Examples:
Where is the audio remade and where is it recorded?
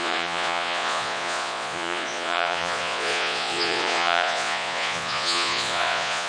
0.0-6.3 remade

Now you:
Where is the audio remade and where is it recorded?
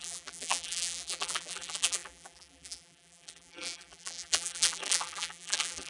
0.0-5.9 remade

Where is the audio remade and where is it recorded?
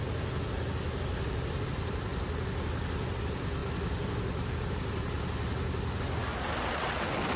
0.0-7.4 recorded